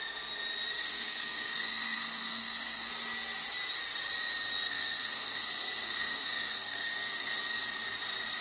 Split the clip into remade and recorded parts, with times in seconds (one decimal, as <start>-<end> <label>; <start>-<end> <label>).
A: 0.0-0.8 recorded; 0.8-2.9 remade; 2.9-4.7 recorded; 4.7-7.4 remade; 7.4-8.4 recorded